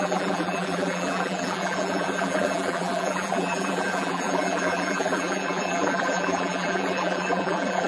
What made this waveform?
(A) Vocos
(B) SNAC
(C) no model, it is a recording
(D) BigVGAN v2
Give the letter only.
D